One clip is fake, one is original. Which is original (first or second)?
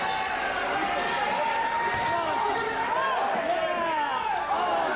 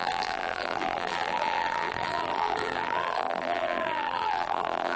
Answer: first